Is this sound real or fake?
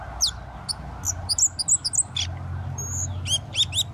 real